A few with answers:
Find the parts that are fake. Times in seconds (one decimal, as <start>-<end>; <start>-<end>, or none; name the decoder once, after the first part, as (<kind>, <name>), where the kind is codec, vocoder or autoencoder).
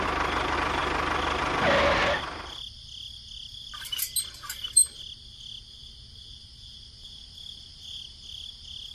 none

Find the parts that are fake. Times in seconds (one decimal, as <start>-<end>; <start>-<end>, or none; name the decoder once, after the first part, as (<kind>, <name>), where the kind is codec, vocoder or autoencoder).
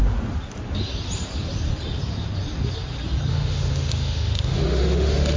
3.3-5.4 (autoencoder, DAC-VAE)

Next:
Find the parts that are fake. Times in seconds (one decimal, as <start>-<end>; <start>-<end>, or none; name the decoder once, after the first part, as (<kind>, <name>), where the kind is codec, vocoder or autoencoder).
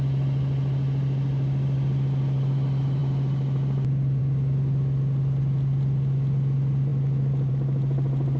none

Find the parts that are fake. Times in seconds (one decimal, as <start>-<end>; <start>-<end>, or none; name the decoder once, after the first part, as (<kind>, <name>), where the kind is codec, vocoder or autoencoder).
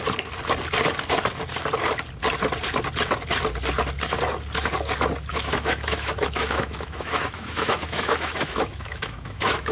5.3-9.7 (autoencoder, DAC-VAE)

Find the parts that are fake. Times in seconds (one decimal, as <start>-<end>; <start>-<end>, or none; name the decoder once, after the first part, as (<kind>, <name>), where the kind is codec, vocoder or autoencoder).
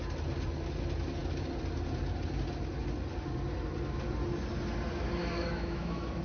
5.2-6.2 (autoencoder, DAC-VAE)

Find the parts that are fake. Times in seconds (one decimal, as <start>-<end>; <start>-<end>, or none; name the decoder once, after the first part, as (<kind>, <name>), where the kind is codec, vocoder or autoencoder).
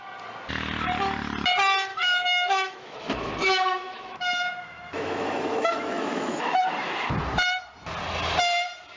1.9-6.6 (autoencoder, DAC-VAE)